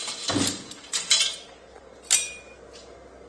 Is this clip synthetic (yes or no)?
no